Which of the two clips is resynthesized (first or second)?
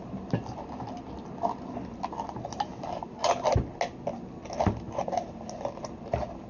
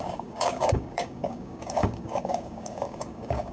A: second